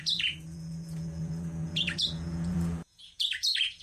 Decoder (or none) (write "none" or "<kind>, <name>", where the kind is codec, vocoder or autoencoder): vocoder, Vocos